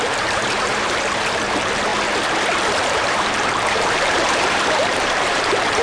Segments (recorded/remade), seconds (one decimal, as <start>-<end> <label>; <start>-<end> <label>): 0.0-1.9 remade; 1.9-2.6 recorded; 2.6-5.8 remade